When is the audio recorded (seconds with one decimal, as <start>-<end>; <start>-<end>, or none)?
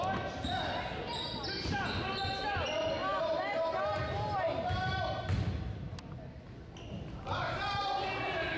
0.0-8.6